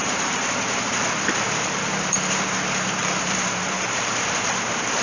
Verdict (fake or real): fake